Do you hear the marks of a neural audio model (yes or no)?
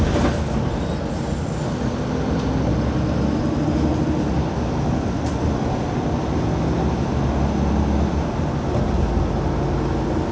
no